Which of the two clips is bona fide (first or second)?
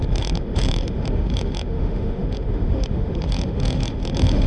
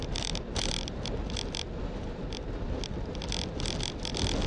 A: second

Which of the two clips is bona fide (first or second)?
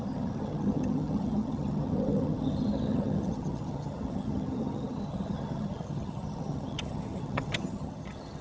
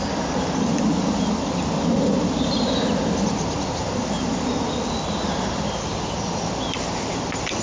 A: second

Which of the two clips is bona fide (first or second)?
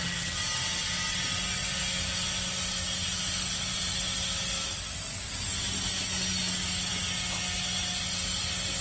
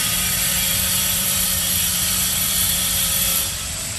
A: first